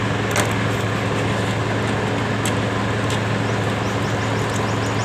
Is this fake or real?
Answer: real